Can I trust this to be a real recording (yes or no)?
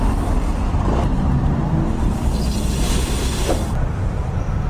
yes